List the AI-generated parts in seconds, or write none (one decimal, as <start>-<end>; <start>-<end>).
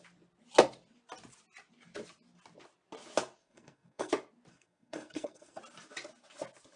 3.4-4.1; 4.5-5.6